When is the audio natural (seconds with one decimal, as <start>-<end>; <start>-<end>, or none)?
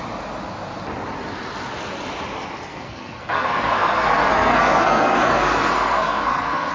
0.0-2.7